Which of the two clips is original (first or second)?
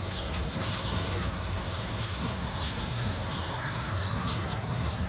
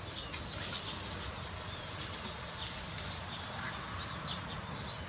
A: second